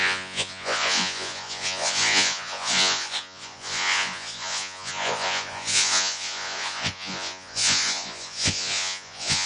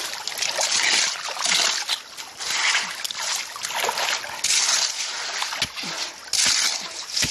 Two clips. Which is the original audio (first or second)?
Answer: second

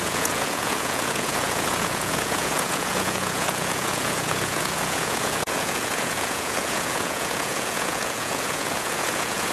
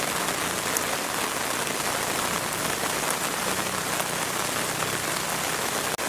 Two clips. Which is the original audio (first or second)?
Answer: second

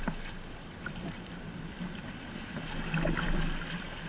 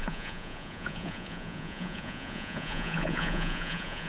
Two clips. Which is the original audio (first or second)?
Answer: first